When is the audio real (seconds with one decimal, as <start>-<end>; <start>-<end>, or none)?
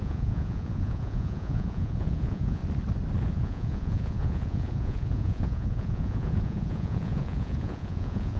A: 2.6-3.2